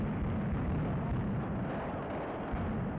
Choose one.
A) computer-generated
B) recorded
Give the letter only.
B